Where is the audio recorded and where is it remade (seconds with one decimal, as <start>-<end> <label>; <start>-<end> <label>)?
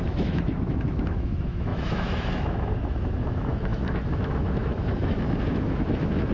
0.0-6.3 remade